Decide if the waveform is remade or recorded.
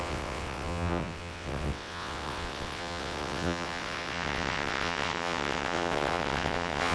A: remade